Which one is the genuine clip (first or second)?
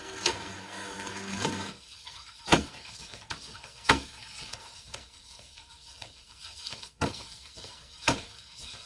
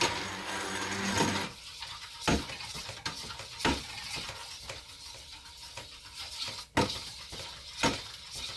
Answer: second